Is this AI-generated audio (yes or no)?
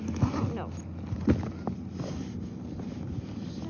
no